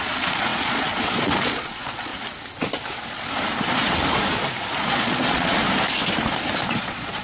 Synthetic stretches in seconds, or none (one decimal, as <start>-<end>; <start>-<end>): 0.0-2.1; 4.9-5.6; 6.7-7.2